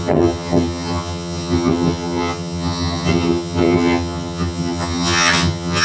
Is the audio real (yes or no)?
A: no